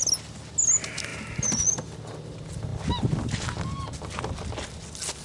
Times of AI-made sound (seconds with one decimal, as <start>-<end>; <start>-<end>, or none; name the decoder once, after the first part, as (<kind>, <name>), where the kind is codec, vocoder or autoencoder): none